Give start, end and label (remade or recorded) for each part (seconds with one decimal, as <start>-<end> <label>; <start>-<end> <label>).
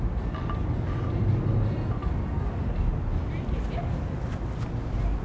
0.0-5.2 recorded